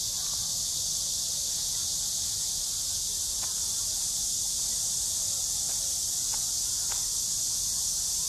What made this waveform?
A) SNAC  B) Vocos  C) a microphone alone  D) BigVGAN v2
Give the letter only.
C